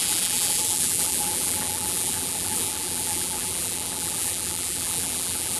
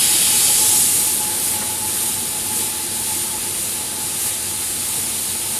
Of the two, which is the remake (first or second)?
first